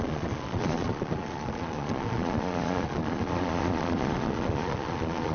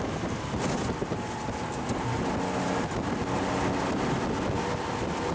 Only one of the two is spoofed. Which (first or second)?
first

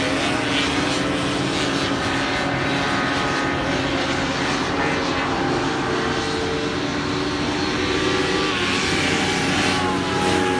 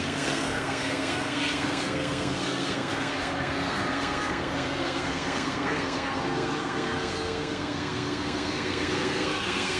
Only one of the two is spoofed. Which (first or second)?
second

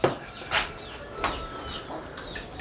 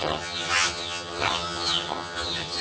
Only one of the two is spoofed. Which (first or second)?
second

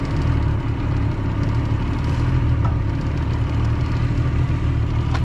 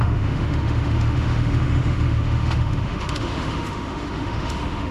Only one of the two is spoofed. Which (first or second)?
second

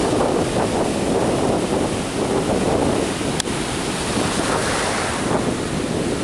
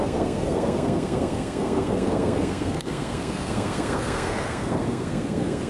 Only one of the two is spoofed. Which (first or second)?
second